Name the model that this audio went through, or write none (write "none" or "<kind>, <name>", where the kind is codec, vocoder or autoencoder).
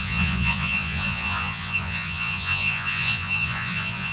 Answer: vocoder, Vocos